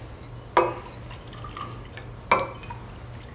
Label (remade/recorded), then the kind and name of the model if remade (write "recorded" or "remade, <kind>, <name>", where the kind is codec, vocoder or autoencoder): recorded